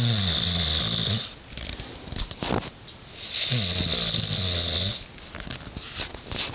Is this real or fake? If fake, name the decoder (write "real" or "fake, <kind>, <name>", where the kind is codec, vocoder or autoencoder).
real